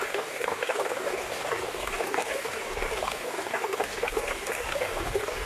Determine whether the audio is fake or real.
fake